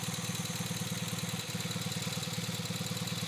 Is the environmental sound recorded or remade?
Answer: recorded